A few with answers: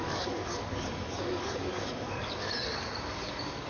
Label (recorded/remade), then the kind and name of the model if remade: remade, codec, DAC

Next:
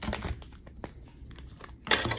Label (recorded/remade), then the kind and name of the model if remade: recorded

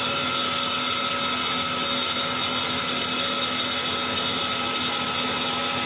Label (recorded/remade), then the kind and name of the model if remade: recorded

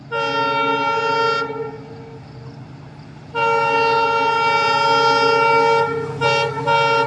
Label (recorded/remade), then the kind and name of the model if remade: recorded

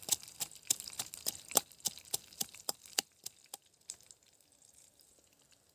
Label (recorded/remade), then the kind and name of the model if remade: recorded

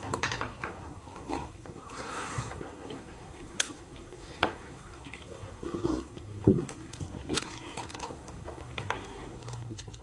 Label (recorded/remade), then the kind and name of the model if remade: remade, codec, SNAC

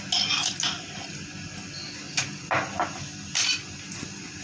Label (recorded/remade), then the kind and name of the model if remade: recorded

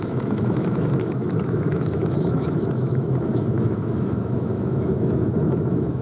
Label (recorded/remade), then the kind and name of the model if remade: remade, autoencoder, DAC-VAE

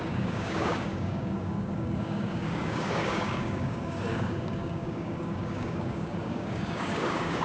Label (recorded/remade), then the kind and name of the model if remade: remade, codec, DAC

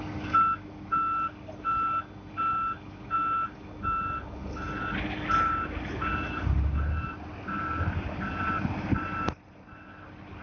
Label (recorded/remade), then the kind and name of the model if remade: recorded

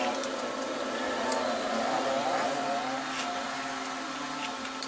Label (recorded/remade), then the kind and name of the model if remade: recorded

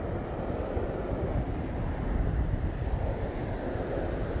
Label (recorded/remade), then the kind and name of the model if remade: recorded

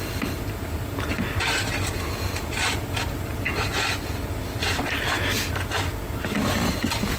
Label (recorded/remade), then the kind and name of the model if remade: remade, vocoder, BigVGAN v2